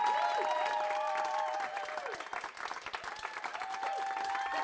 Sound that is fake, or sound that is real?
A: real